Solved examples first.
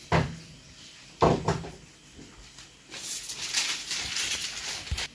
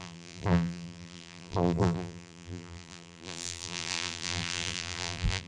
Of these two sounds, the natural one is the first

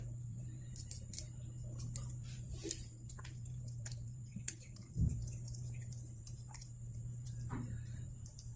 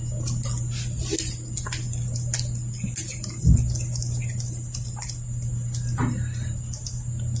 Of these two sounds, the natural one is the second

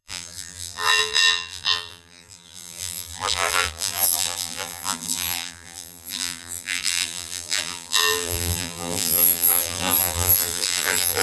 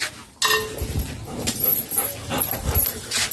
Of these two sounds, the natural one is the second